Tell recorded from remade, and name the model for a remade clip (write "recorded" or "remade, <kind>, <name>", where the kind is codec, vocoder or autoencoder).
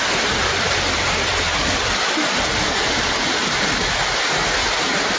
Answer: recorded